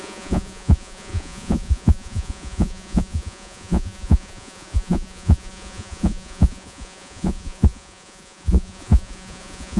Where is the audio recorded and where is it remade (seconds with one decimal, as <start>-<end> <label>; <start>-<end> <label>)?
0.0-9.8 remade